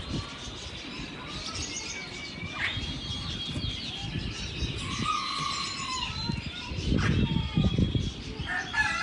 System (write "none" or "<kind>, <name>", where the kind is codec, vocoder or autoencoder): none